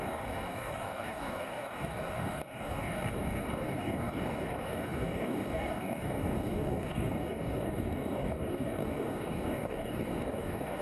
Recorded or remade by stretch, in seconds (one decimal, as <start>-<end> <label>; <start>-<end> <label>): 0.0-10.8 remade